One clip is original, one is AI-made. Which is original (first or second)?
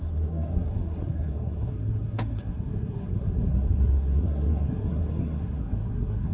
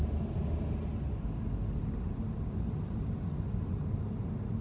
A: second